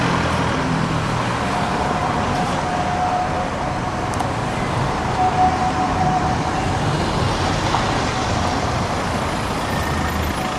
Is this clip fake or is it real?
real